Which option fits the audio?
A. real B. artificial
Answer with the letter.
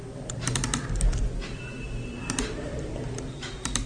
B